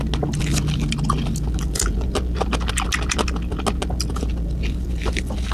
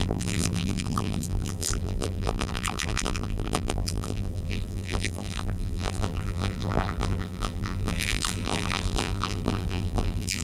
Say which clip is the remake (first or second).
second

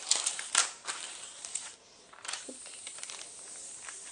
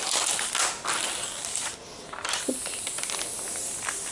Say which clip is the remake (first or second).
first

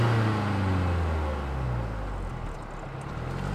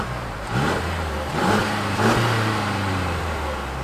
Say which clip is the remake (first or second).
second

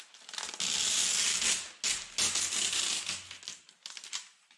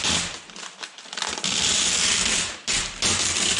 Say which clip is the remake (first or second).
second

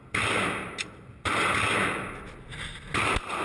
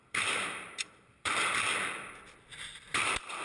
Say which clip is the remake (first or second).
second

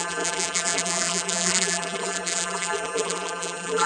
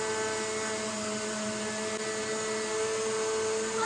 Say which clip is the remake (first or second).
first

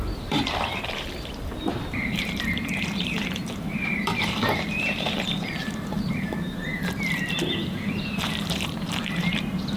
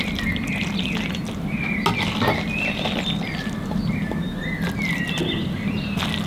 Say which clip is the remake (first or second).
first